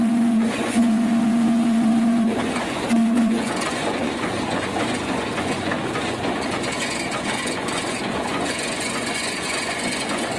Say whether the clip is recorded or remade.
remade